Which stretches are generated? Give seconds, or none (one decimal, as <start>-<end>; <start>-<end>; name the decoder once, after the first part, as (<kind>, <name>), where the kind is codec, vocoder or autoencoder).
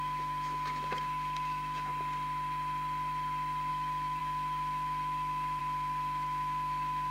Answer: 0.0-1.9 (autoencoder, DAC-VAE); 3.7-7.1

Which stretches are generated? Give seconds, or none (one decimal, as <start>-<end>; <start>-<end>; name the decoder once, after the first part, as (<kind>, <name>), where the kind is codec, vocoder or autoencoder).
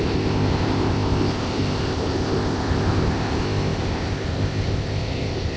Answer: 0.0-5.6 (codec, ZipCodec)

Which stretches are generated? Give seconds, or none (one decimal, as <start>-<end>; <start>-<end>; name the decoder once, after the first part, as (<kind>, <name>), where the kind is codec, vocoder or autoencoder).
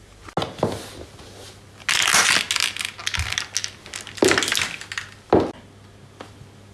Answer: none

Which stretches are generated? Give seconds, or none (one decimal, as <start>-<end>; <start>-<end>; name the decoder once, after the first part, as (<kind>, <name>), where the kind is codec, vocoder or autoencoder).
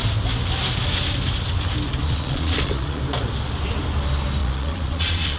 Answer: 2.0-3.0 (vocoder, Vocos); 4.4-5.4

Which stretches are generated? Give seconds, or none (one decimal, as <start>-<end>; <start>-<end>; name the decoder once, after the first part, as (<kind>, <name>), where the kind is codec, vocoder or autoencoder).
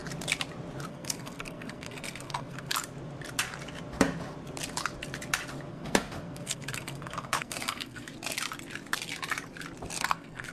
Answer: 0.9-2.7 (codec, SNAC); 5.7-8.1; 10.0-10.5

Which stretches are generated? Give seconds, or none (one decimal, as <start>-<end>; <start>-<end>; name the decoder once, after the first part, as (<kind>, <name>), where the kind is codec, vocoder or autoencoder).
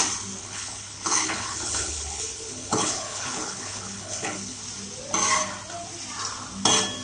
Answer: 0.4-4.6 (codec, HILCodec)